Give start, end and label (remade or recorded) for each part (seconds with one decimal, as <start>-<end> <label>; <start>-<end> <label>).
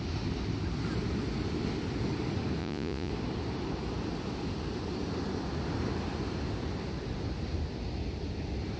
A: 0.0-2.6 recorded; 2.6-3.1 remade; 3.1-8.8 recorded